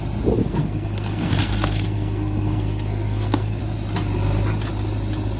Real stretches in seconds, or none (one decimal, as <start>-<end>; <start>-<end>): 0.0-0.4; 3.6-5.4

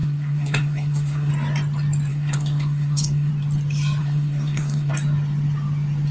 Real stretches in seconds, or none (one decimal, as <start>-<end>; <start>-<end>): 1.3-2.1; 3.3-4.0; 4.9-6.1